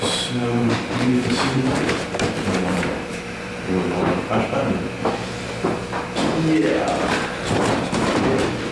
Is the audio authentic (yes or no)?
no